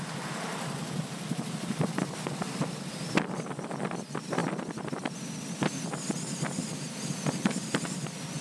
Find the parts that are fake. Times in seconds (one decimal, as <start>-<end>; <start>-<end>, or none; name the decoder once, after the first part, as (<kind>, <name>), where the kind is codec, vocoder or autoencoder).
none